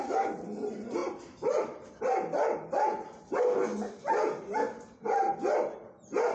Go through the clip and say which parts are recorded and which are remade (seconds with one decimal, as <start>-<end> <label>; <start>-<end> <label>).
0.0-6.3 recorded